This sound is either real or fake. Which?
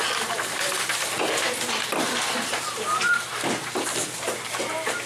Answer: fake